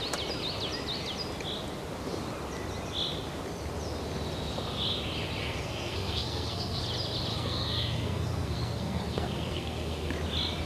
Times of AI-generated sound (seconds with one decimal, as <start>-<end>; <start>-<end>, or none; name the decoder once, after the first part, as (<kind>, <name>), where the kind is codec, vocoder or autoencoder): 5.4-6.8 (codec, SNAC); 7.3-10.1